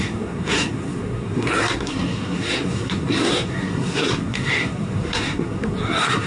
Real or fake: fake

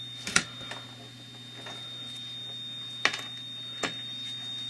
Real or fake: real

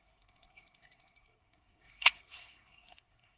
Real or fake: fake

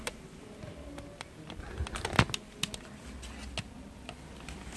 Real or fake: real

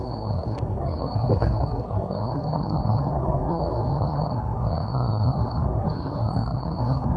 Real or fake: fake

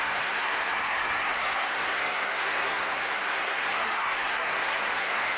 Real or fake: fake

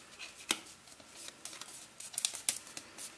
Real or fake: real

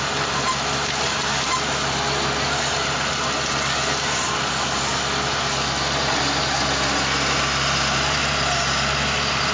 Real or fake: real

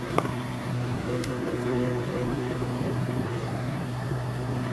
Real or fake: fake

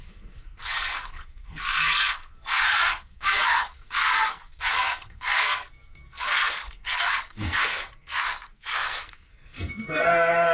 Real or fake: fake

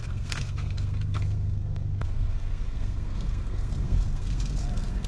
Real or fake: fake